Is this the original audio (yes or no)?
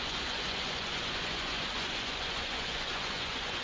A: no